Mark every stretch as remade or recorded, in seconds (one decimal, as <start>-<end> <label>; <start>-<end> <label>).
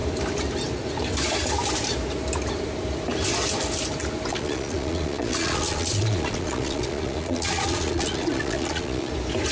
0.0-4.3 recorded; 4.3-9.1 remade; 9.1-9.5 recorded